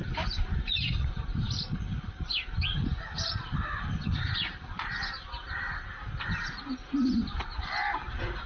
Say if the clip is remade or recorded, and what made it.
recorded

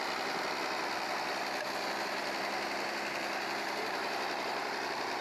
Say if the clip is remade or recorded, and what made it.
remade, vocoder, BigVGAN v2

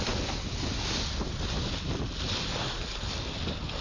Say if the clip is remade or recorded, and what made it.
recorded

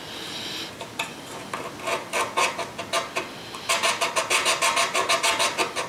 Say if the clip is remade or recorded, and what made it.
recorded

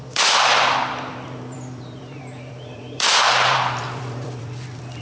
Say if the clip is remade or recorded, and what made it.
remade, vocoder, BigVGAN v2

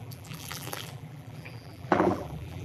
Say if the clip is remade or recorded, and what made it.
remade, vocoder, BigVGAN v2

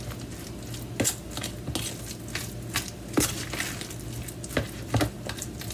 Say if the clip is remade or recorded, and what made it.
recorded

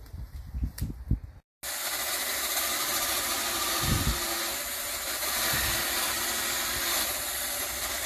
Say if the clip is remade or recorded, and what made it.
recorded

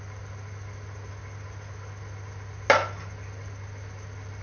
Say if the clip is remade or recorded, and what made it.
recorded